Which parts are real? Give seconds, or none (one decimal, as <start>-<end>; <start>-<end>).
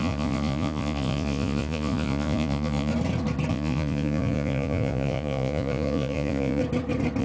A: 2.9-3.5; 6.6-7.2